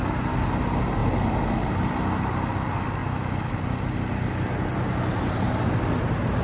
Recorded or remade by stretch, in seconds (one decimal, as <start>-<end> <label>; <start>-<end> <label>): 0.0-6.4 recorded